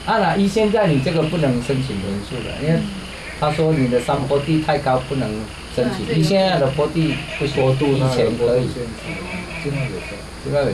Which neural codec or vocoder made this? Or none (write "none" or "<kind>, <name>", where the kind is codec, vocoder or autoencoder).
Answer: none